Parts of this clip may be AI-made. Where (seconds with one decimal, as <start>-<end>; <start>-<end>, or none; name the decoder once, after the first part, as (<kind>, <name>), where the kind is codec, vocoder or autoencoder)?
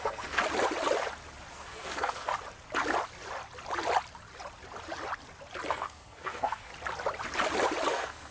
0.0-0.4 (codec, SNAC); 1.5-2.3; 5.7-6.7; 7.9-8.3